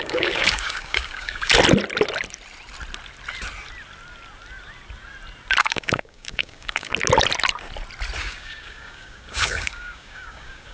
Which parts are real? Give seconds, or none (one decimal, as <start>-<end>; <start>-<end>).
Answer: 1.5-5.6; 6.9-8.2